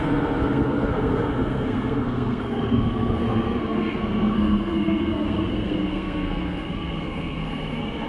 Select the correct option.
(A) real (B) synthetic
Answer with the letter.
B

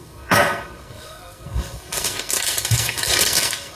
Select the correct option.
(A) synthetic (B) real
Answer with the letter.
A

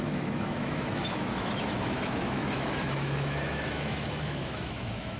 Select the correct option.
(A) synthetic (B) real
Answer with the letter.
A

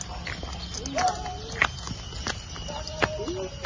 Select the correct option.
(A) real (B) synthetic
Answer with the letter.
A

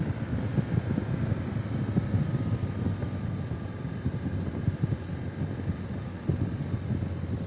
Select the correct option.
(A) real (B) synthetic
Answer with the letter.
A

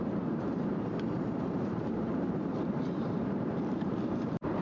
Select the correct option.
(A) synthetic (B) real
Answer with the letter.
A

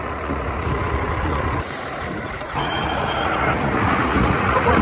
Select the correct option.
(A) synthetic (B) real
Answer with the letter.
A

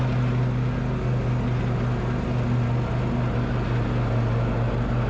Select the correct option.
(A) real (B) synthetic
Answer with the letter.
A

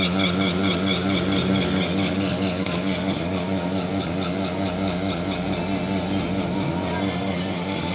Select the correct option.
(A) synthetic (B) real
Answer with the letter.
B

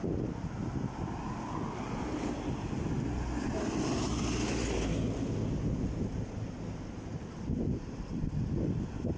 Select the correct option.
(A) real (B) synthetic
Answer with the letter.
A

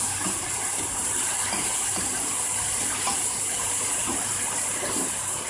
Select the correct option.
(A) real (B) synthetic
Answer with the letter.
B